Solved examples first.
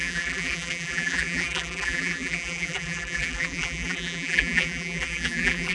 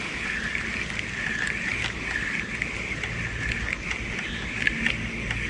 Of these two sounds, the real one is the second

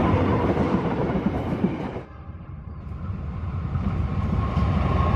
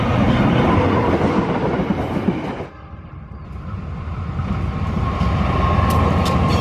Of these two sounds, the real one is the second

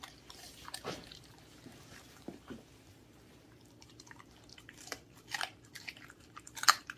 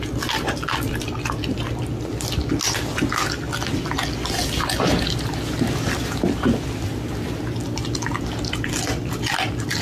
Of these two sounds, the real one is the second